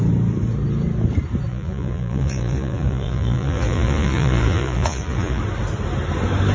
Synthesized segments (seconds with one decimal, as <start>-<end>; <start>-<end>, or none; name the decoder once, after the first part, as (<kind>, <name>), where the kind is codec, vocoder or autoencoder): 1.5-5.4 (vocoder, Vocos)